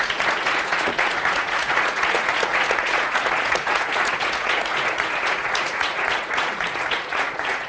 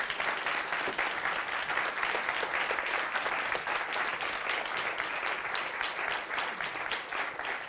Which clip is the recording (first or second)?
second